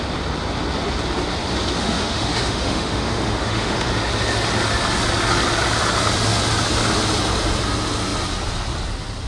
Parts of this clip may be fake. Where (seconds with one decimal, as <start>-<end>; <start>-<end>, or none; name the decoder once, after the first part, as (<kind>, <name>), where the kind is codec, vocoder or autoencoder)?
1.8-3.9 (autoencoder, DAC-VAE)